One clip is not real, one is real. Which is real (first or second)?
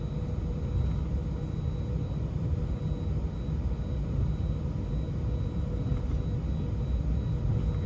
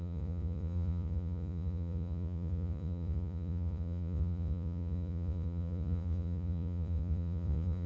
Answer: first